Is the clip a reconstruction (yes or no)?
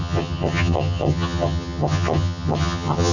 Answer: yes